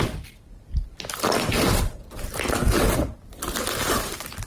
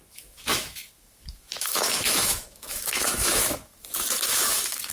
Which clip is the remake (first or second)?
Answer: second